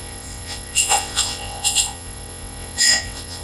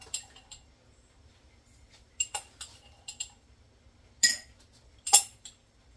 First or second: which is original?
second